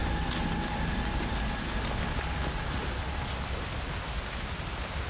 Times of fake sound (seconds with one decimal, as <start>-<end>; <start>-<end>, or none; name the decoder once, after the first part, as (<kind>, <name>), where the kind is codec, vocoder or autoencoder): none